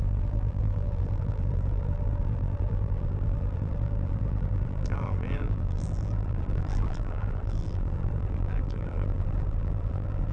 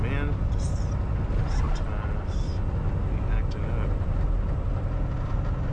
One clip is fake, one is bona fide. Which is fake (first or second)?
first